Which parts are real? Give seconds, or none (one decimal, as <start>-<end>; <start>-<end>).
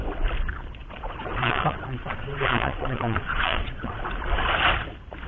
0.0-0.8; 4.0-5.3